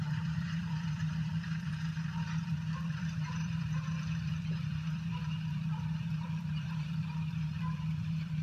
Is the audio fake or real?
fake